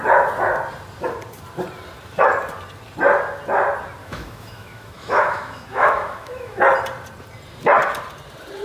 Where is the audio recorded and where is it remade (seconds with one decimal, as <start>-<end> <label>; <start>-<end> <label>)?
0.0-4.0 recorded; 4.0-6.6 remade; 6.6-8.6 recorded